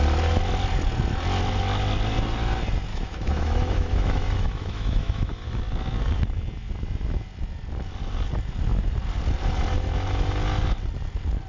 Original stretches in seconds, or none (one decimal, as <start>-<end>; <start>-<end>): 0.0-2.9; 5.6-11.5